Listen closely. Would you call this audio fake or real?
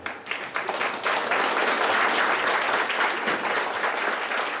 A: real